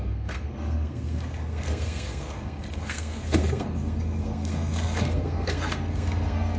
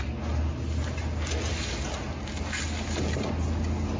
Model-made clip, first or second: first